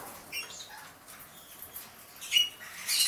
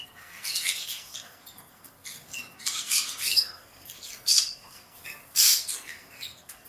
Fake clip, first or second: second